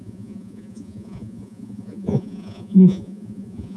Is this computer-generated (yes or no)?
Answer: yes